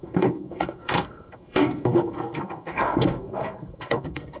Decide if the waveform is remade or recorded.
remade